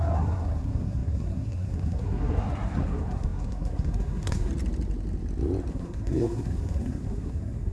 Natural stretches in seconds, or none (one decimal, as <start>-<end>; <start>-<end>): 4.5-5.7